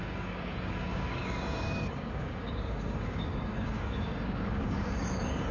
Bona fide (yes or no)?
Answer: no